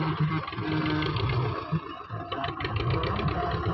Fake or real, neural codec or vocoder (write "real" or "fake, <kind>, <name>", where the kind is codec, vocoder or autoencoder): real